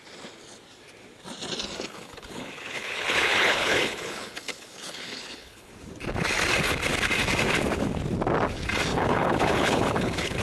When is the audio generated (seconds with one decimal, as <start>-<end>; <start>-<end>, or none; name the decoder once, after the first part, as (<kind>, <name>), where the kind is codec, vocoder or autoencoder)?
1.9-5.7 (codec, HILCodec); 8.9-10.4